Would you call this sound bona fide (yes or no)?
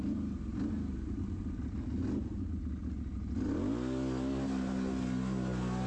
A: yes